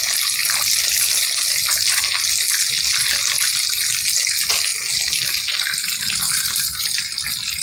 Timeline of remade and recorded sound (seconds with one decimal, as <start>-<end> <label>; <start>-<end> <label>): 0.0-0.4 recorded; 0.4-2.2 remade; 2.2-4.7 recorded; 4.7-6.8 remade; 6.8-7.6 recorded